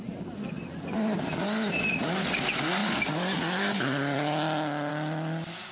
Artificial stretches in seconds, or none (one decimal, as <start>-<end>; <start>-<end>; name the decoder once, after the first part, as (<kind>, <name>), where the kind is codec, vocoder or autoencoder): none